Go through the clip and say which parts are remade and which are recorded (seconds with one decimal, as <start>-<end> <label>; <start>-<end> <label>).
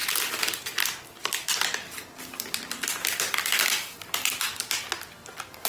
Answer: 0.0-5.7 recorded